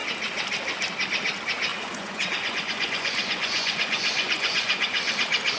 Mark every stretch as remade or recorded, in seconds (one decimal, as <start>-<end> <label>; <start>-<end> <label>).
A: 0.0-1.7 recorded; 1.7-5.1 remade; 5.1-5.6 recorded